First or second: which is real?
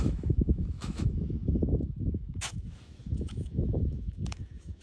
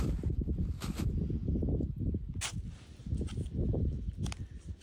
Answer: second